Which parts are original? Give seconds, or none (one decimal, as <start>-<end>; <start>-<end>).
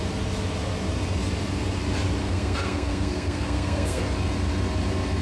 0.0-2.2; 4.0-5.2